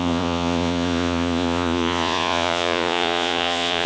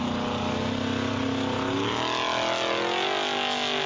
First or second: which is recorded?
second